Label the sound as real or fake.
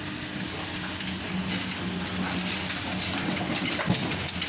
real